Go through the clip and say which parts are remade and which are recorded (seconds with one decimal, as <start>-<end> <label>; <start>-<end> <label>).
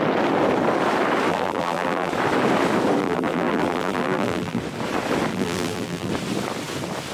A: 0.0-1.3 recorded; 1.3-2.1 remade; 2.1-3.0 recorded; 3.0-4.6 remade; 4.6-5.3 recorded; 5.3-6.1 remade; 6.1-7.1 recorded